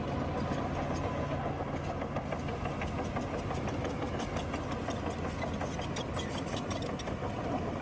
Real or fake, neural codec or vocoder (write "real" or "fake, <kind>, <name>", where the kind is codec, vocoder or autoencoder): real